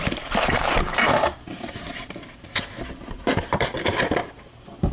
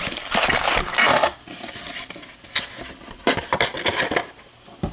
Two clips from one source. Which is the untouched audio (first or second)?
second